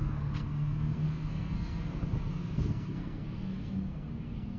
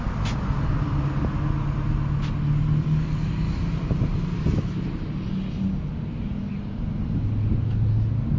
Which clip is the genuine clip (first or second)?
second